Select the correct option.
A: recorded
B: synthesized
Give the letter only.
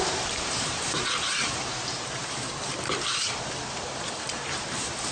B